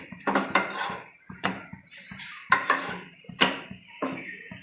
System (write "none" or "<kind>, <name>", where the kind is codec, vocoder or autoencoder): vocoder, BigVGAN v2